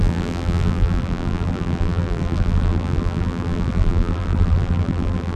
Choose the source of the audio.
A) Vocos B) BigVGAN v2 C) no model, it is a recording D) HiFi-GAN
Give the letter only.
B